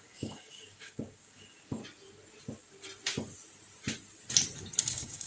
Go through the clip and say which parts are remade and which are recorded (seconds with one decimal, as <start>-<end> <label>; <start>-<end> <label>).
0.0-1.8 remade; 1.8-4.8 recorded; 4.8-5.3 remade